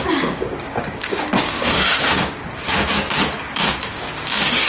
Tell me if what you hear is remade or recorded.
remade